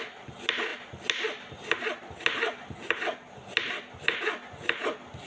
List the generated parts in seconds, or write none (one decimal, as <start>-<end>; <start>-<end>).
none